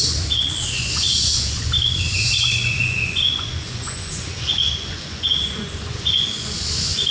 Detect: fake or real fake